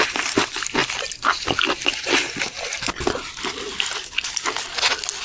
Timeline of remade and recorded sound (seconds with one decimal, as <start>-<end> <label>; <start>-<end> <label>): 0.0-5.2 recorded